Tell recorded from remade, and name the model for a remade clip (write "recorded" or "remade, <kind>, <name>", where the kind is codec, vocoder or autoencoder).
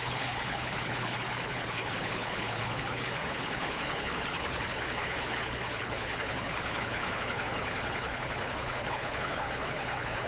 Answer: remade, codec, HILCodec